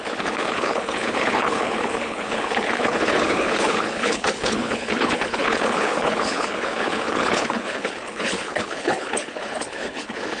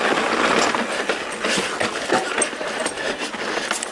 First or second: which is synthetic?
first